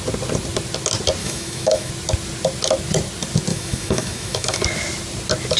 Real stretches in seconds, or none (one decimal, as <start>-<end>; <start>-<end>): 0.0-1.2; 1.9-3.5; 4.6-5.6